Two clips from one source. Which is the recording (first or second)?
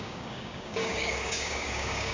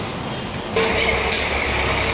second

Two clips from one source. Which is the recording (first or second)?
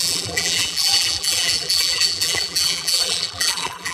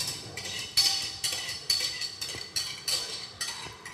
second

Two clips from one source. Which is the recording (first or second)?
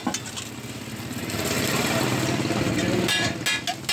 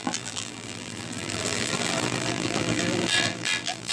first